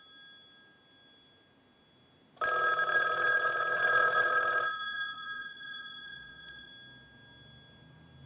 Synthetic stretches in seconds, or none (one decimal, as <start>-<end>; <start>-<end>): 2.9-6.7